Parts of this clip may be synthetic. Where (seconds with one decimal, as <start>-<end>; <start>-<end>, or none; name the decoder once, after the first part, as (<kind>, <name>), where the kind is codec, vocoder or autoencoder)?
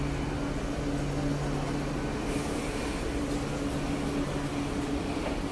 none